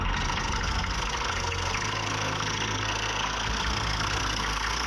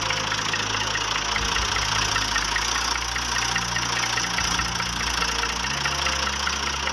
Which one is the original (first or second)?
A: second